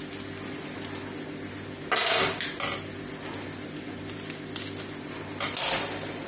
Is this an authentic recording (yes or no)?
yes